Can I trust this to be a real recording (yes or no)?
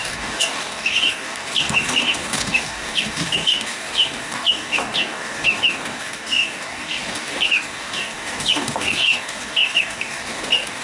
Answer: no